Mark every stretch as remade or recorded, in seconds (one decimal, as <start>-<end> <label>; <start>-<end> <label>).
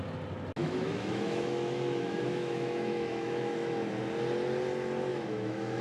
0.0-0.6 recorded; 0.6-4.0 remade; 4.0-5.1 recorded; 5.1-5.8 remade